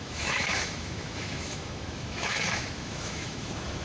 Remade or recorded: remade